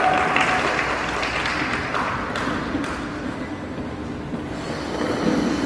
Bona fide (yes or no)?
yes